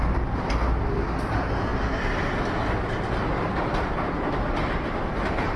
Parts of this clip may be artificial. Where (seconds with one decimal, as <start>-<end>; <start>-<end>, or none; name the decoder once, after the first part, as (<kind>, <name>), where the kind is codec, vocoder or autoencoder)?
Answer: none